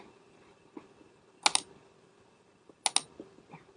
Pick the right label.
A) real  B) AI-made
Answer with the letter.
A